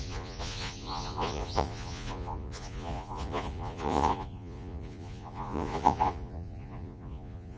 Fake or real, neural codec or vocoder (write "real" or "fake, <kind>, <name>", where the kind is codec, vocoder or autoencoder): fake, vocoder, Vocos